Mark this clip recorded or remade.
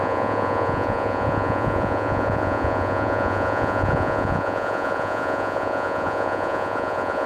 remade